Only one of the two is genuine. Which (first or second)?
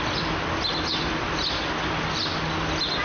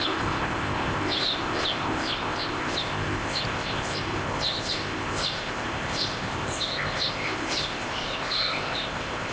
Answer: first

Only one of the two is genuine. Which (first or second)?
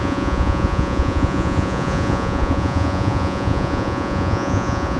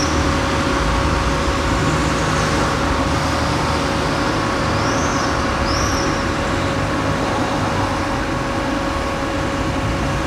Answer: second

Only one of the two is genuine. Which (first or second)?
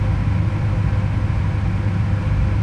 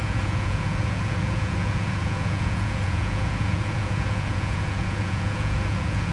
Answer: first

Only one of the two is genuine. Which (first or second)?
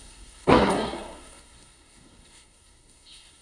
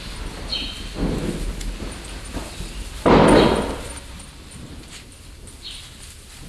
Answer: second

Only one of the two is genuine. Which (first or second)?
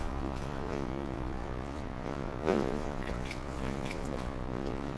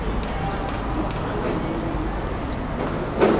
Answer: second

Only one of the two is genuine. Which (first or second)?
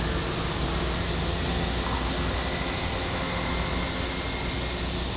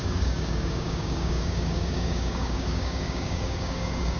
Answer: first